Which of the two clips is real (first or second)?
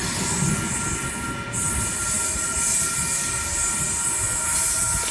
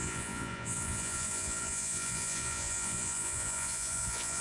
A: first